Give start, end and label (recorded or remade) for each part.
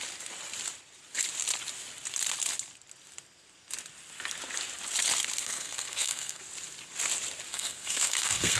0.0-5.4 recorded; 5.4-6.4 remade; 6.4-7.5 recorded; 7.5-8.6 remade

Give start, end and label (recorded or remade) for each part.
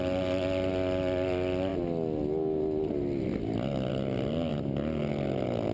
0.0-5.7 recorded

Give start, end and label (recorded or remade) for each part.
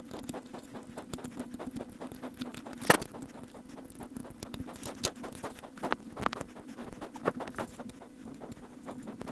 0.0-9.3 recorded